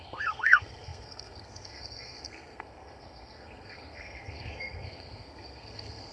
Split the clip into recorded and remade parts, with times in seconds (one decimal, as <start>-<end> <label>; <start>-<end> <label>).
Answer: 0.0-6.1 remade